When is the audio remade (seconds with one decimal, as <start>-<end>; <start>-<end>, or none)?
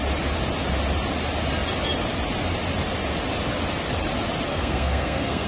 4.5-5.5